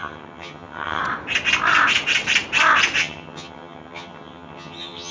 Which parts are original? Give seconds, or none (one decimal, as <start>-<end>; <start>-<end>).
1.0-3.0